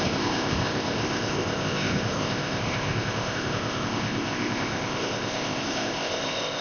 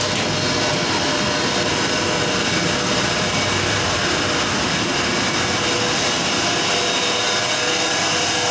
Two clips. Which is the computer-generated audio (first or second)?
first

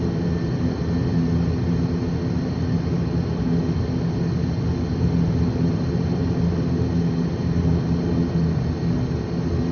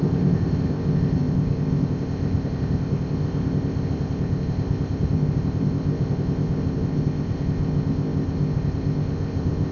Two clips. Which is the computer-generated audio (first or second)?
second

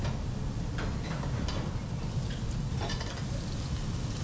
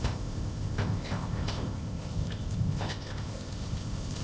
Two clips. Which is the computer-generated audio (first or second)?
second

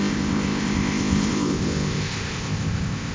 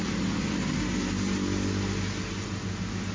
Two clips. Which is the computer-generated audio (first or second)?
first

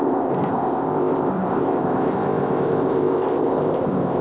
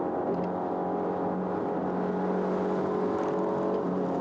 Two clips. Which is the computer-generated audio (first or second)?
first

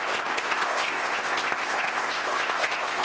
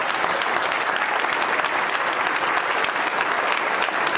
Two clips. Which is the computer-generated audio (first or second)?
first